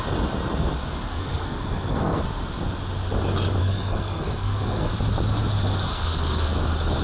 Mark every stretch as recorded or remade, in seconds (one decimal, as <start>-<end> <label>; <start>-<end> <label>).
0.0-1.1 recorded; 1.1-2.2 remade; 2.2-3.6 recorded; 3.6-4.9 remade; 4.9-5.9 recorded; 5.9-6.5 remade; 6.5-7.0 recorded